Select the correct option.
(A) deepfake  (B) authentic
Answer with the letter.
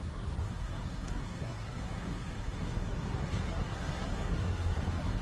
A